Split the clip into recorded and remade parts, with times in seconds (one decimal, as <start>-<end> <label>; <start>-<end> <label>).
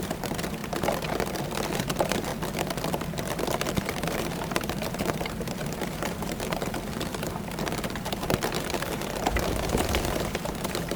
0.0-0.6 remade; 0.6-1.7 recorded; 1.7-2.3 remade; 2.3-3.7 recorded; 3.7-11.0 remade